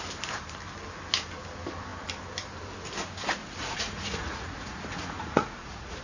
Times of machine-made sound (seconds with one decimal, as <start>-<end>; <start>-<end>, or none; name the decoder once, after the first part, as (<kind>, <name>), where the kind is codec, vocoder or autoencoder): 3.4-6.0 (vocoder, Vocos)